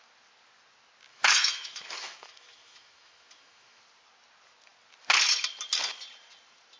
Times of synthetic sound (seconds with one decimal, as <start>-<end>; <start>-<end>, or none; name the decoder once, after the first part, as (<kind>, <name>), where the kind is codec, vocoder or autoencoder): 1.1-3.8 (autoencoder, DAC-VAE)